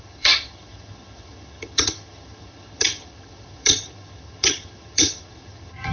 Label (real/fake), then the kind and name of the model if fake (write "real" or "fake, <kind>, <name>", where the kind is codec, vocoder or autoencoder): fake, vocoder, HiFi-GAN